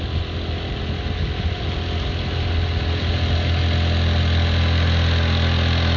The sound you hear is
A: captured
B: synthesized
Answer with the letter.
A